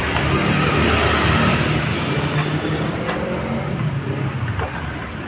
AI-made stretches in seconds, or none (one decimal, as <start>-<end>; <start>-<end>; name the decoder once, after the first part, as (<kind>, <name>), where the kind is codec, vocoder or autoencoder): none